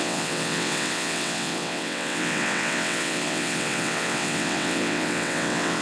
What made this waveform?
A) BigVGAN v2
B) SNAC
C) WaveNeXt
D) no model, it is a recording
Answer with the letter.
C